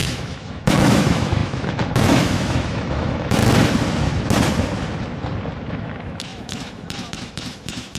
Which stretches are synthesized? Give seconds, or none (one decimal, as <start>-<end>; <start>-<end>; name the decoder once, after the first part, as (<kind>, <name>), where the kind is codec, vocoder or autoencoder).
0.0-3.4 (autoencoder, DAC-VAE); 5.7-8.0